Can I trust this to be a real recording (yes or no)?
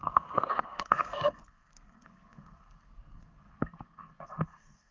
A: no